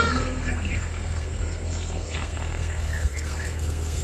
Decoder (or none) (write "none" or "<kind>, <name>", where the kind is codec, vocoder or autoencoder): codec, SNAC